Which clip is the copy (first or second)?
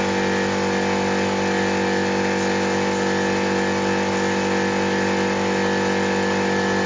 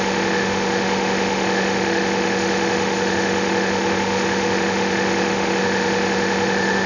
second